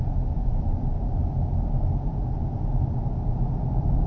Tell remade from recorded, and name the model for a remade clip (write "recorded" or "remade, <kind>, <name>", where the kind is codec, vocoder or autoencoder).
recorded